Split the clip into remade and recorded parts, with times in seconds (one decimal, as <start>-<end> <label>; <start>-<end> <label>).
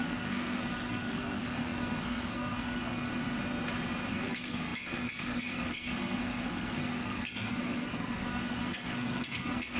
0.0-3.1 remade; 3.1-4.1 recorded; 4.1-9.8 remade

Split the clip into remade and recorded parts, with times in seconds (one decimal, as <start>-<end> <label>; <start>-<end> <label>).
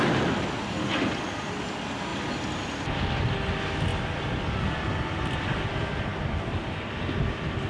0.0-7.7 recorded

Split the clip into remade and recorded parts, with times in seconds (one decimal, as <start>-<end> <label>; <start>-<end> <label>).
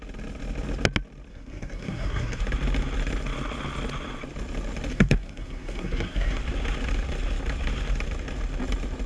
0.0-1.3 recorded; 1.3-2.4 remade; 2.4-4.9 recorded; 4.9-6.4 remade; 6.4-9.1 recorded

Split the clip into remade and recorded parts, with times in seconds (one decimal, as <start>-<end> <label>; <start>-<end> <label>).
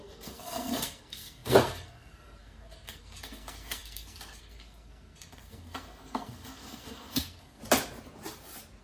0.0-7.6 remade; 7.6-8.8 recorded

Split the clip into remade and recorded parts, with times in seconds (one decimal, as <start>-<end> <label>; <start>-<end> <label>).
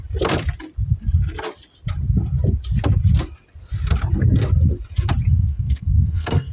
0.0-5.5 recorded; 5.5-6.5 remade